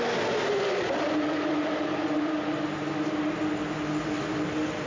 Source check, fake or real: real